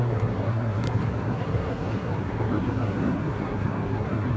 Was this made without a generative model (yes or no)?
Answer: no